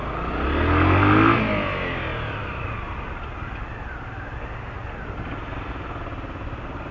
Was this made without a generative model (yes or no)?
yes